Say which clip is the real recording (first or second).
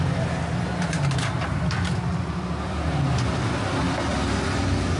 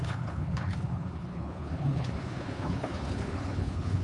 first